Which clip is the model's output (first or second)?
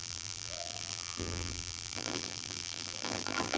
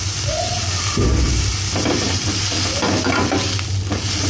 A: first